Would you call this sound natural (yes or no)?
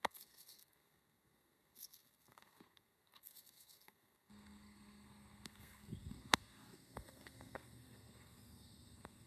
no